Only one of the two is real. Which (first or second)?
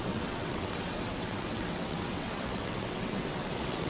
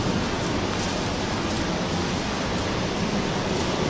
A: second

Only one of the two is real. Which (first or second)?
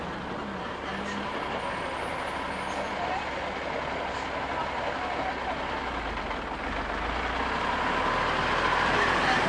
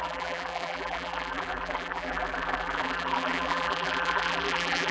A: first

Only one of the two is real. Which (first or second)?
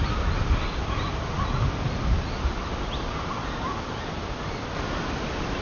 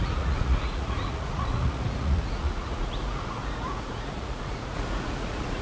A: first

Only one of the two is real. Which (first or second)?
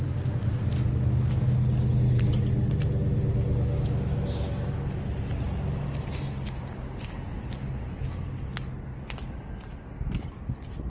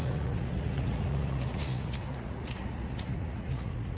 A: first